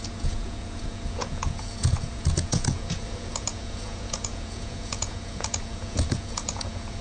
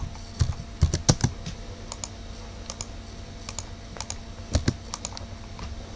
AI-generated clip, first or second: first